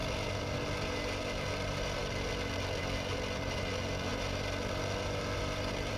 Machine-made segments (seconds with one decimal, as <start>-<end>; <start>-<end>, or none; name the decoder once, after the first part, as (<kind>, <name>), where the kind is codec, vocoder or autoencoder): none